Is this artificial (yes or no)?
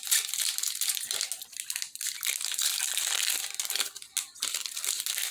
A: no